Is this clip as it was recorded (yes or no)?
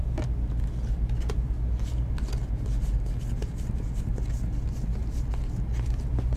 yes